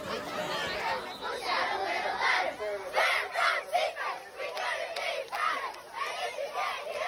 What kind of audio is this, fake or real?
real